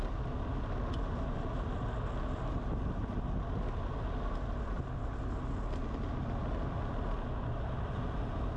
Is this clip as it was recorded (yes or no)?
yes